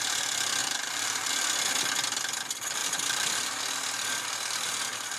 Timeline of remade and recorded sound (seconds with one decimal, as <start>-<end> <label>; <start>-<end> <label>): 0.0-0.6 recorded; 0.6-1.3 remade; 1.3-2.8 recorded; 2.8-3.6 remade; 3.6-5.2 recorded